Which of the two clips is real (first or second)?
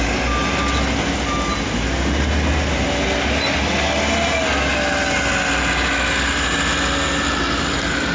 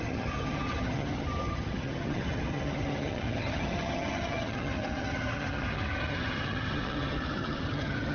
first